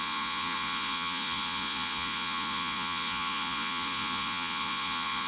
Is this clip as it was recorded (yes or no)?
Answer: no